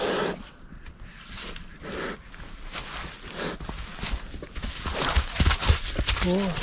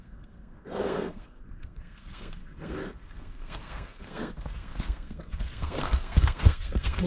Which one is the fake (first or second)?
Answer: second